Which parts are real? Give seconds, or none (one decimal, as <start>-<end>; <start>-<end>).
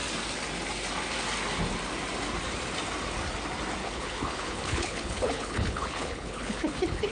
0.0-3.8